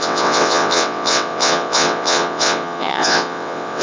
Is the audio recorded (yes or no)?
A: no